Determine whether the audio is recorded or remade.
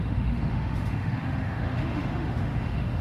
remade